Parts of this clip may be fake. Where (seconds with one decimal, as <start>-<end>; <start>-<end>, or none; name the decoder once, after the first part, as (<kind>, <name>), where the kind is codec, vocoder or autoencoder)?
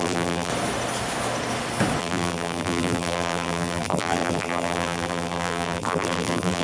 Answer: 0.0-0.5 (vocoder, BigVGAN v2); 2.0-6.6